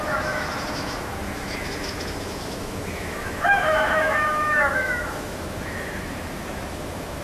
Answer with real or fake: fake